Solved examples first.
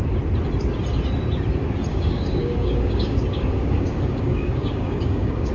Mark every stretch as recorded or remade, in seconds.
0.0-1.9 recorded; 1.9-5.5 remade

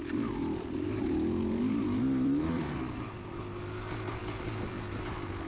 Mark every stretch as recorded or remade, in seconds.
0.0-3.3 remade; 3.3-4.2 recorded; 4.2-4.8 remade; 4.8-5.5 recorded

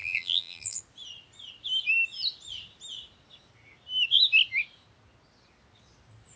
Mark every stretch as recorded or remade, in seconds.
0.0-0.8 remade; 0.8-6.4 recorded

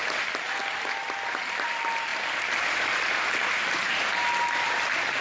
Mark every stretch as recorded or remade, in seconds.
0.0-5.2 recorded

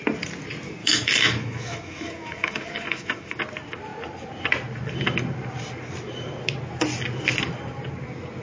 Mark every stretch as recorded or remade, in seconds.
0.0-0.8 recorded; 0.8-3.4 remade; 3.4-8.4 recorded

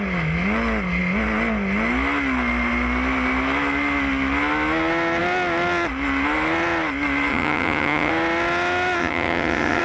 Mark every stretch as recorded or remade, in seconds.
0.0-7.3 recorded; 7.3-8.1 remade; 8.1-9.0 recorded; 9.0-9.8 remade

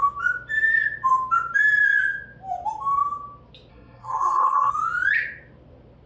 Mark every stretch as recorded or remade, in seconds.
0.0-3.7 recorded; 3.7-4.7 remade; 4.7-6.1 recorded